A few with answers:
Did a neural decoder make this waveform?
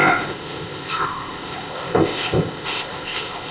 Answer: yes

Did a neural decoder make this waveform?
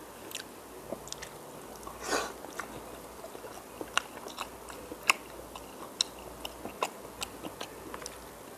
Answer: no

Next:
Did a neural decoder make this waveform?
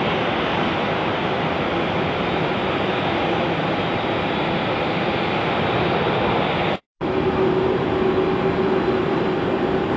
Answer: no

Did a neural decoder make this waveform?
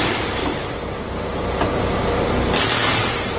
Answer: no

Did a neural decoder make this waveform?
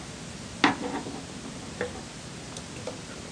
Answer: no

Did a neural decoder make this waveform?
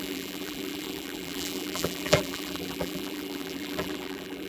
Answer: yes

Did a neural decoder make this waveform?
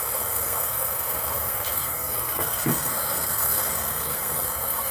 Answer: yes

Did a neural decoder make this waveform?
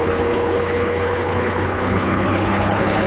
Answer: yes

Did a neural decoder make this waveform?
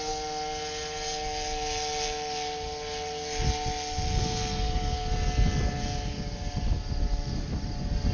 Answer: no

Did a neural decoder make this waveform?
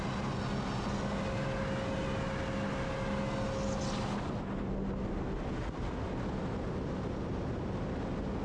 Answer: no